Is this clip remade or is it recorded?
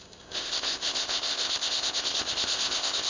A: remade